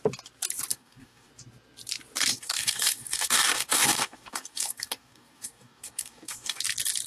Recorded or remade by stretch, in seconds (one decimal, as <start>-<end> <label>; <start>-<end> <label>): 0.0-0.7 recorded; 0.7-1.3 remade; 1.3-2.3 recorded; 2.3-6.6 remade; 6.6-7.1 recorded